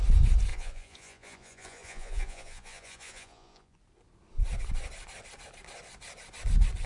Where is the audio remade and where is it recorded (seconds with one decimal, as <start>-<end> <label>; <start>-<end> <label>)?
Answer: 0.0-0.5 recorded; 0.5-3.8 remade; 3.8-6.9 recorded